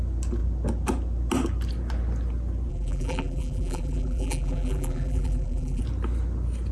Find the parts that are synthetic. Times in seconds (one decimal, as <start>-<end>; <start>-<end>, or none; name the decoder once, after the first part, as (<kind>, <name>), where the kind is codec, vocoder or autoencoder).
2.7-5.8 (vocoder, BigVGAN v2)